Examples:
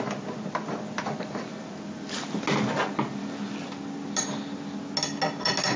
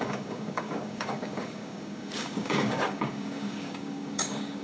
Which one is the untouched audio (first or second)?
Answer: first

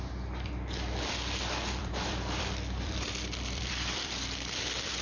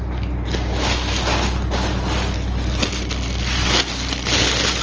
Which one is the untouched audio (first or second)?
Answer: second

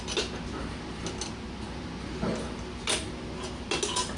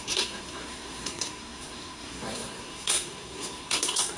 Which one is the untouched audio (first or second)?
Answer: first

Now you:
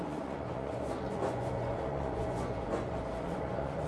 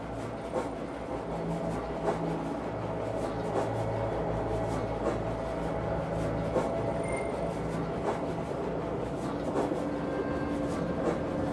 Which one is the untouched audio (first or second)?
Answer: second